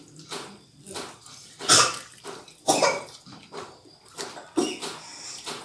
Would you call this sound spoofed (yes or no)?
yes